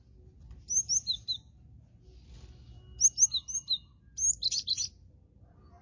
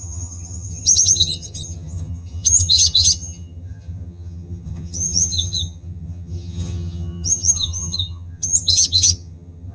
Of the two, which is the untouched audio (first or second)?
first